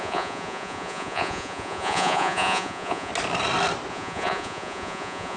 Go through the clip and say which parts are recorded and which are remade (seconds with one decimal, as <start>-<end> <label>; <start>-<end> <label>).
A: 0.0-3.1 remade; 3.1-3.9 recorded; 3.9-5.4 remade